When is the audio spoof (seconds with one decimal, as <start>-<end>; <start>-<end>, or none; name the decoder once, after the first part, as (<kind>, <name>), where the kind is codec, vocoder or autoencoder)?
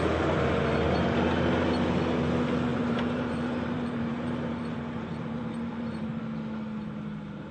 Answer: 2.7-6.2 (vocoder, BigVGAN v2)